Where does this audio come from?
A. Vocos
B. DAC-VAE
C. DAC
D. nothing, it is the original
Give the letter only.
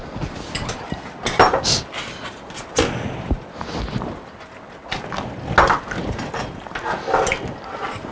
D